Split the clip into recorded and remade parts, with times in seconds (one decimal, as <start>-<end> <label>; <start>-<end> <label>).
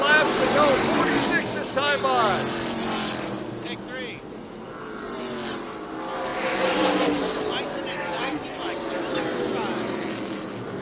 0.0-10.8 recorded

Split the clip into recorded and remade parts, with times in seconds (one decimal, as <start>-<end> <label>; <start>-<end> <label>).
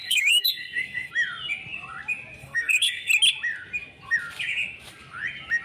0.0-1.1 remade; 1.1-2.4 recorded; 2.4-3.1 remade; 3.1-5.6 recorded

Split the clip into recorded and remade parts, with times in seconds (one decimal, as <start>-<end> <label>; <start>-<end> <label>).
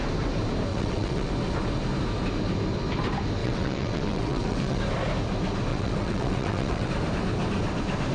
0.0-0.7 recorded; 0.7-1.3 remade; 1.3-3.4 recorded; 3.4-4.8 remade; 4.8-5.7 recorded; 5.7-6.9 remade; 6.9-8.1 recorded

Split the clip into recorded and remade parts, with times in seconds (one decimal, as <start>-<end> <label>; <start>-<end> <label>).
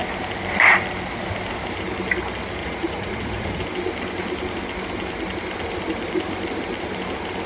0.0-2.6 recorded; 2.6-3.6 remade; 3.6-7.5 recorded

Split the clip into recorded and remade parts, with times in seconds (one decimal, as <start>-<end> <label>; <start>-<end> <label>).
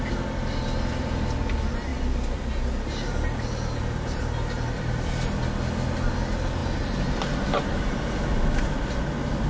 0.0-1.9 recorded; 1.9-2.5 remade; 2.5-9.5 recorded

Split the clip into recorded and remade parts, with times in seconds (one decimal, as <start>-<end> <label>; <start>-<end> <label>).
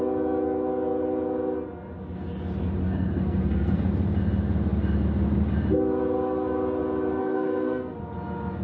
0.0-2.8 recorded; 2.8-3.9 remade; 3.9-7.2 recorded; 7.2-8.0 remade; 8.0-8.6 recorded